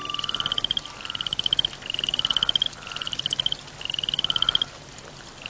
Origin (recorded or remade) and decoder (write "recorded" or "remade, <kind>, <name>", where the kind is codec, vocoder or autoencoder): recorded